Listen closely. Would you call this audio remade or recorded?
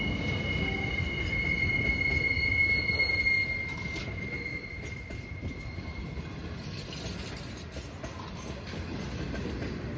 recorded